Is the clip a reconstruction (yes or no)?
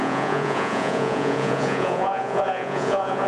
yes